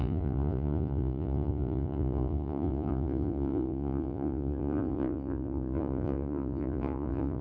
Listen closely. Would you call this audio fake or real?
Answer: fake